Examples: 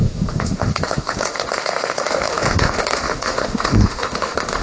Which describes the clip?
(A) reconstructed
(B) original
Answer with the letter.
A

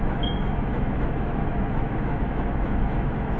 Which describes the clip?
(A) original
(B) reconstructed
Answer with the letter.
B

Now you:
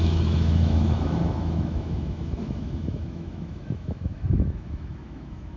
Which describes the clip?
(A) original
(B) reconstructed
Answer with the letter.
B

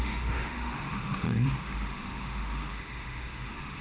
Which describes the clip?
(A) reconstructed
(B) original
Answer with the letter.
A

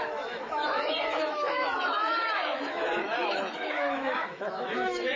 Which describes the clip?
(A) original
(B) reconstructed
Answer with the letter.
B